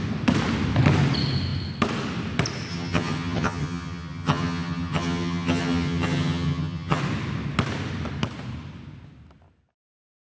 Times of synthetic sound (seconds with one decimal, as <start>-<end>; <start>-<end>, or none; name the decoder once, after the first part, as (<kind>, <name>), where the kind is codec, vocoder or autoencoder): 2.7-7.0 (vocoder, HiFi-GAN)